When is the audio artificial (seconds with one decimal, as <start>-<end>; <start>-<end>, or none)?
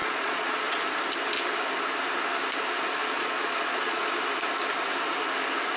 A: 0.0-0.8; 3.0-4.0